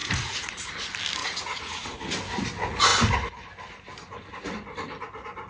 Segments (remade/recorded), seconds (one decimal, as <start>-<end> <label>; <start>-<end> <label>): 0.0-0.7 remade; 0.7-1.2 recorded; 1.2-2.0 remade; 2.0-5.5 recorded